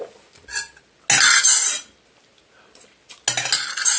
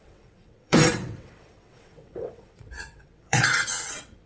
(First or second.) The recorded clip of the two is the first